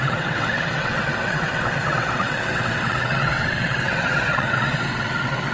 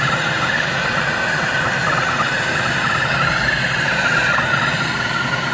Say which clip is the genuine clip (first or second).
second